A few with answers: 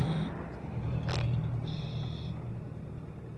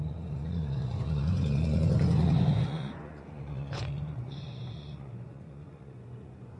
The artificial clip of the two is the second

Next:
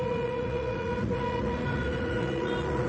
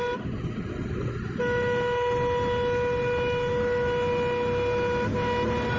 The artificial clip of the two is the first